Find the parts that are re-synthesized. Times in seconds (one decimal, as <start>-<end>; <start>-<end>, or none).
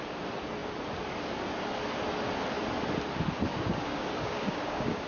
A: 3.5-5.1